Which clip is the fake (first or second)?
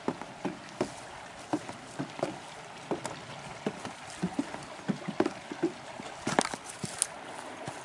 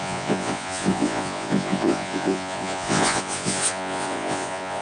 second